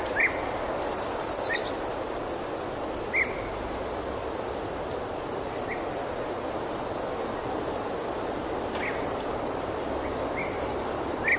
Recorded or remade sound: recorded